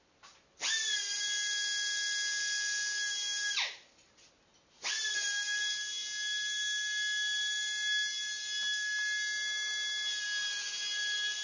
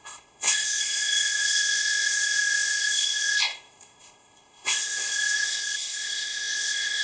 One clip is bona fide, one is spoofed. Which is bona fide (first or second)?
first